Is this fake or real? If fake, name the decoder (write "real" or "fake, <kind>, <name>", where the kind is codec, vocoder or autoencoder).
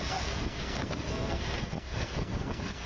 fake, codec, SNAC